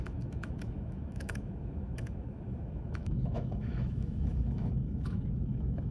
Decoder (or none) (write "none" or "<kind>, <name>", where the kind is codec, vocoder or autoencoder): autoencoder, DAC-VAE